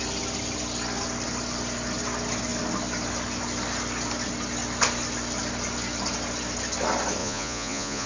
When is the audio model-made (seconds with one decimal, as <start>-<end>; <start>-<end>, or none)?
7.2-8.1